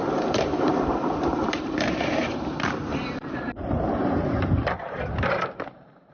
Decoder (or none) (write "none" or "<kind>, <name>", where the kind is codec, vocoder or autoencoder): vocoder, BigVGAN v2